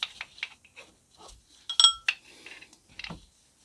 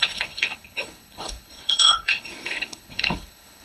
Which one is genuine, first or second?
first